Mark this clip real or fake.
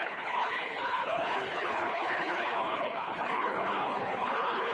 fake